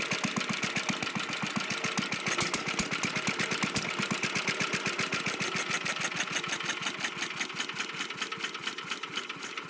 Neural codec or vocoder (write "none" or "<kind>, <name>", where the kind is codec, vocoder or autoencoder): none